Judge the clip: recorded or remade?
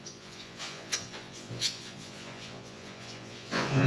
remade